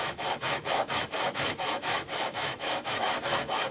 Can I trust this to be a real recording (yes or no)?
no